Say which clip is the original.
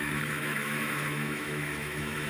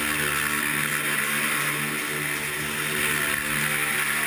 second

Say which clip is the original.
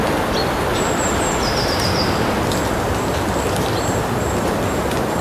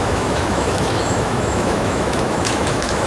first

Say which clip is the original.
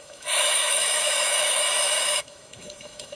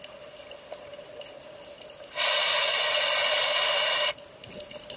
second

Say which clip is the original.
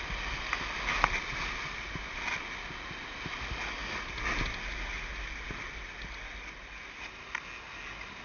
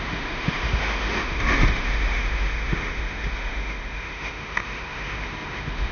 first